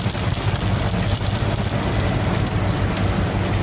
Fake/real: real